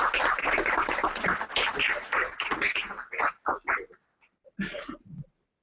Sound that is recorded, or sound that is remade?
recorded